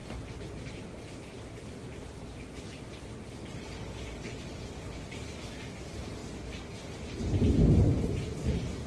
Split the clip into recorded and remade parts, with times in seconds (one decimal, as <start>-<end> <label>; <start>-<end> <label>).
0.0-8.9 recorded